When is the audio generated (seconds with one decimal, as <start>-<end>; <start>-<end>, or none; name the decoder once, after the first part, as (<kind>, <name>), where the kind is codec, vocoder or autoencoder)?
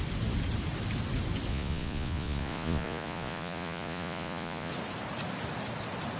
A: 1.5-4.7 (vocoder, Vocos)